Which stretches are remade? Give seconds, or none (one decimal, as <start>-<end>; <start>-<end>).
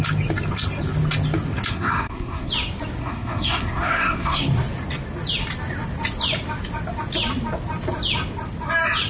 1.7-2.5; 3.0-4.4